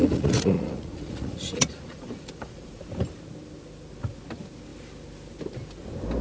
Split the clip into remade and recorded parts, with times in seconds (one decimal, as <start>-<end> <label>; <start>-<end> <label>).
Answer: 0.0-2.8 remade; 2.8-6.2 recorded

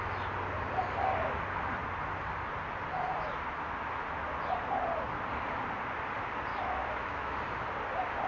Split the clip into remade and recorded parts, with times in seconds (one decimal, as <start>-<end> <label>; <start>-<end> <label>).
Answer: 0.0-6.5 recorded; 6.5-7.4 remade; 7.4-8.3 recorded